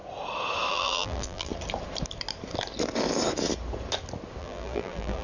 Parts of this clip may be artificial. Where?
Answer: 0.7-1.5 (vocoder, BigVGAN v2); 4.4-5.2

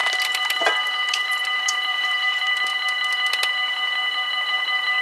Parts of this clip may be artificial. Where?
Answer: 1.1-2.7 (vocoder, BigVGAN v2); 4.4-5.0

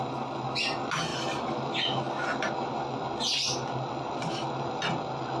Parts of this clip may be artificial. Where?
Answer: none